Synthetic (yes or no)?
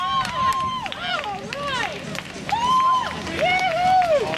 no